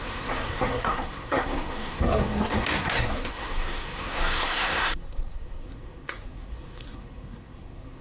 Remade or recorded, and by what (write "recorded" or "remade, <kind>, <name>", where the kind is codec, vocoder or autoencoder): remade, codec, SNAC